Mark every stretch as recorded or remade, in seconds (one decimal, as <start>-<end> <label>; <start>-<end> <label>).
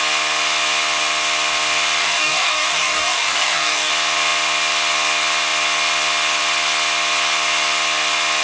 0.0-2.0 recorded; 2.0-3.9 remade; 3.9-8.4 recorded